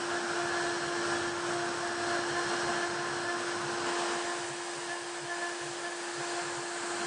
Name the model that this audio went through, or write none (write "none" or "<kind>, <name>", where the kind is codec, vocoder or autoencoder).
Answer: none